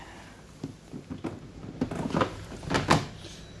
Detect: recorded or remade recorded